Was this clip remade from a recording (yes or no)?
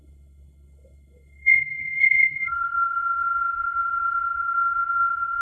yes